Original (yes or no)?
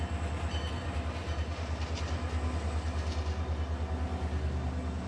yes